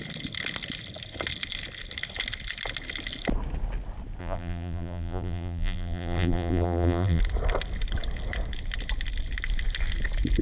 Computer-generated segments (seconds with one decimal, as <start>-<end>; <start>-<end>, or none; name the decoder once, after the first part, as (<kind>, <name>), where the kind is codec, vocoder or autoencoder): 4.2-7.2 (vocoder, BigVGAN v2)